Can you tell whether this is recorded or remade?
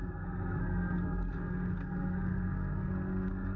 remade